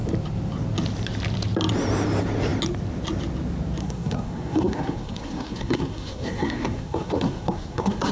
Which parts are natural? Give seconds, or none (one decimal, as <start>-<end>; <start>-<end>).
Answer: 0.0-3.8

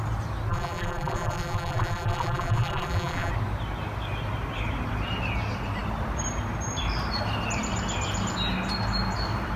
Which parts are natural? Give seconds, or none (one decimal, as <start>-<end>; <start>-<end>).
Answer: 0.0-0.5; 3.3-9.6